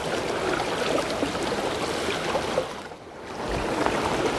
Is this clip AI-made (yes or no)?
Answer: no